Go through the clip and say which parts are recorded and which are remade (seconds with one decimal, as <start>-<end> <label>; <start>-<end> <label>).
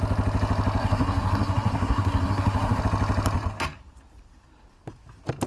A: 0.0-0.8 recorded; 0.8-2.8 remade; 2.8-5.5 recorded